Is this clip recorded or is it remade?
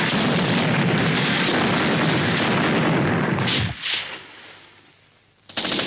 recorded